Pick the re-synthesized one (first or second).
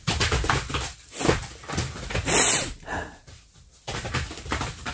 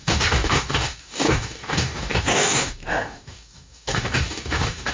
second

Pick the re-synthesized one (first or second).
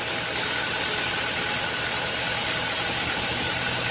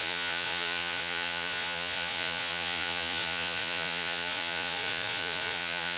second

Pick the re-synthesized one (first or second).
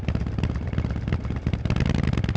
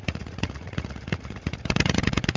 second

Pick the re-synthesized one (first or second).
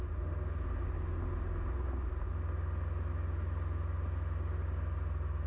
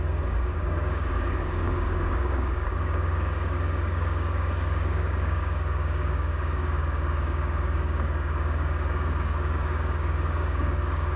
second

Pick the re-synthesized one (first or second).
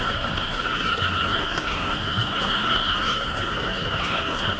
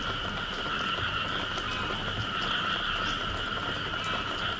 first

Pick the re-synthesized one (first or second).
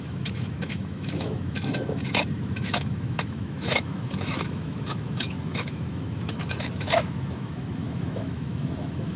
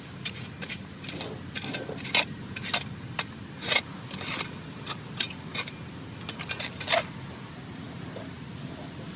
first